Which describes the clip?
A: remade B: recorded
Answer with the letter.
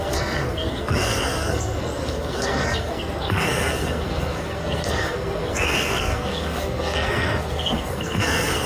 A